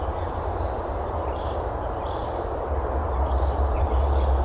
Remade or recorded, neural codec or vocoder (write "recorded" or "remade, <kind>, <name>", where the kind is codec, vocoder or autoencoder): remade, vocoder, BigVGAN v2